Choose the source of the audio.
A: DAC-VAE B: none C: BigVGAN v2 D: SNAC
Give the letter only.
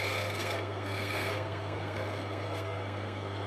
D